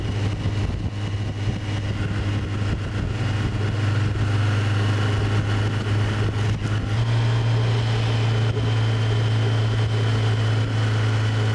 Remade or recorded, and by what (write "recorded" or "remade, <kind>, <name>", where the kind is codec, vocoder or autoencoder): recorded